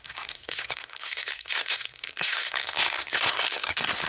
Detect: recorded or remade remade